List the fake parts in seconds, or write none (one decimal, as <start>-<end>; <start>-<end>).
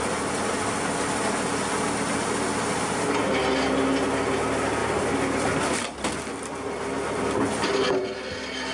4.8-7.2